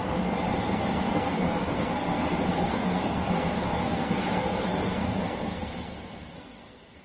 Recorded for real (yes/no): no